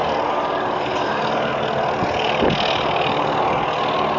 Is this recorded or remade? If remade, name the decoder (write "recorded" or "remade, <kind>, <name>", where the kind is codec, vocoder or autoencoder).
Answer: recorded